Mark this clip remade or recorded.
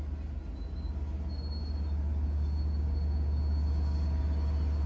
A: recorded